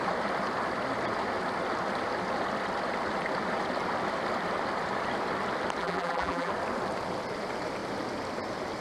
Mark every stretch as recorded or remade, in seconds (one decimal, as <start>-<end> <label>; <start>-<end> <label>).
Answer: 0.0-5.8 recorded; 5.8-6.5 remade; 6.5-8.8 recorded